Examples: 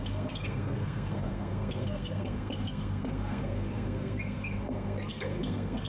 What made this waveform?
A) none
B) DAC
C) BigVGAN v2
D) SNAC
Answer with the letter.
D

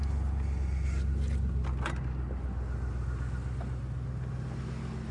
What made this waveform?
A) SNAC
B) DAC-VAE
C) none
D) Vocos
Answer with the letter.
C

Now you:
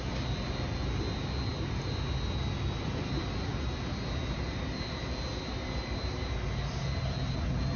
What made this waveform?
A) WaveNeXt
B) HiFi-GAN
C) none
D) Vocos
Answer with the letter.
C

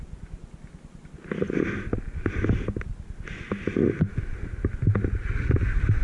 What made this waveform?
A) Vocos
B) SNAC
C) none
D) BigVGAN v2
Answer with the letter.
C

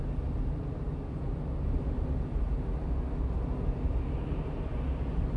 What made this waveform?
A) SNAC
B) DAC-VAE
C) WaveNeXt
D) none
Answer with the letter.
D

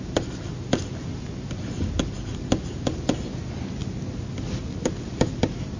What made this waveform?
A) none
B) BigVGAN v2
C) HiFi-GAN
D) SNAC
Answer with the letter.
A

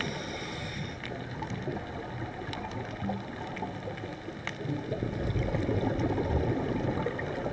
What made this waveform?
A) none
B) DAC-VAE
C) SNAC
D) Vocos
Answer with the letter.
A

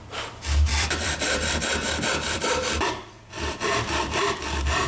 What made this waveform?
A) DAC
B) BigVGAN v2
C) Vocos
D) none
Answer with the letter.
B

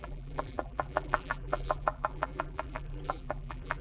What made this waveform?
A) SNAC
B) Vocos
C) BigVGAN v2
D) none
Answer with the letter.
C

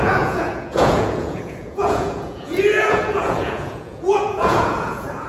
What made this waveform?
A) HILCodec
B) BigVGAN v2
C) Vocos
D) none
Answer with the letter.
C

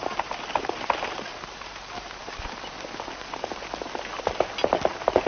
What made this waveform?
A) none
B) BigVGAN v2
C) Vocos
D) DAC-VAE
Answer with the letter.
A